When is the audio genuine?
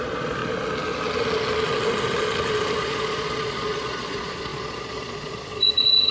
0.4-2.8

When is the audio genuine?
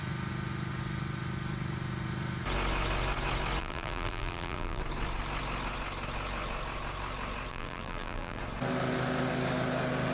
0.0-3.6; 4.8-7.5; 8.4-10.1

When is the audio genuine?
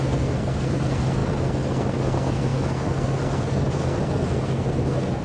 none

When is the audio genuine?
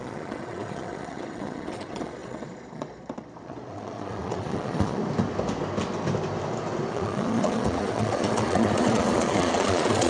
5.0-6.9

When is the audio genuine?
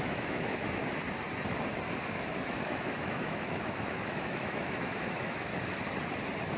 0.8-2.1; 5.5-6.6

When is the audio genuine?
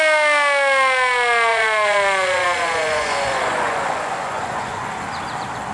0.0-1.5; 4.9-5.7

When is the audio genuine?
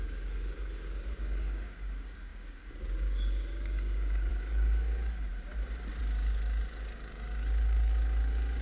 5.3-6.0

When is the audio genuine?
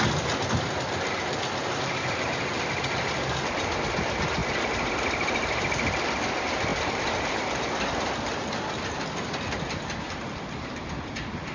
0.0-11.5